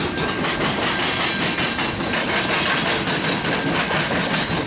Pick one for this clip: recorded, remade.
recorded